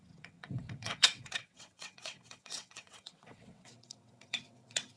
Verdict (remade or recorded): remade